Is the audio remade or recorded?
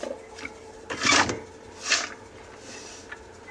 recorded